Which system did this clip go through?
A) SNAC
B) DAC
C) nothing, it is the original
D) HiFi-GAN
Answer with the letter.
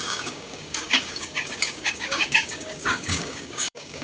B